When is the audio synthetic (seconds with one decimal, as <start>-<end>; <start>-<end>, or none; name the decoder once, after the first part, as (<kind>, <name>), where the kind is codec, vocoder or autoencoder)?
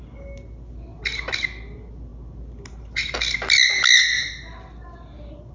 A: none